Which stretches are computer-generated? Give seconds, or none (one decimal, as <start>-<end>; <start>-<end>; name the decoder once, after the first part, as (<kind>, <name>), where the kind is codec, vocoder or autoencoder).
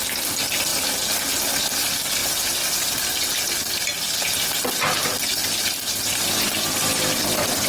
none